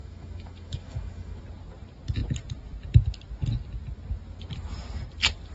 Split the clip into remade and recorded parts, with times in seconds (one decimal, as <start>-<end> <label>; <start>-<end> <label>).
0.0-1.4 remade; 1.4-5.5 recorded